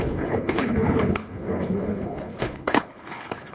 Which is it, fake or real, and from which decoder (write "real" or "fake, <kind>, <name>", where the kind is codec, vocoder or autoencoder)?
fake, codec, HILCodec